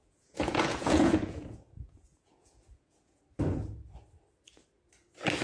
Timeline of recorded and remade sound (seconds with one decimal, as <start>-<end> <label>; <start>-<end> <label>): 0.0-3.2 remade; 3.2-5.4 recorded